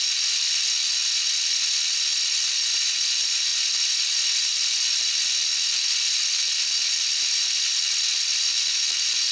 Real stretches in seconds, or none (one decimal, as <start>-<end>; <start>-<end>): 0.0-9.3